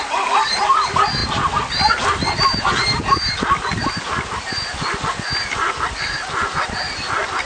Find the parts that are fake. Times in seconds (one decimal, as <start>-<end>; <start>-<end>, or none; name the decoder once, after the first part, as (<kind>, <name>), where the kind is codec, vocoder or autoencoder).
none